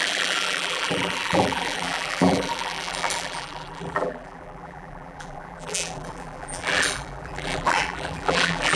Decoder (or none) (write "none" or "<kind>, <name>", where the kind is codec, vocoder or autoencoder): vocoder, BigVGAN v2